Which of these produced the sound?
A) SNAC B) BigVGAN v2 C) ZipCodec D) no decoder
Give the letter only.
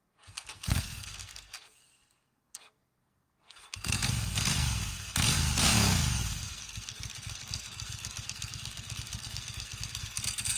A